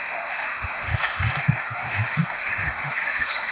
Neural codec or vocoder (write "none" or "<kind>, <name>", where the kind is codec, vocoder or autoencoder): autoencoder, DAC-VAE